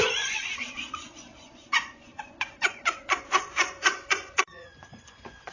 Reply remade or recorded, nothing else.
remade